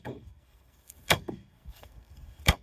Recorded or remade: remade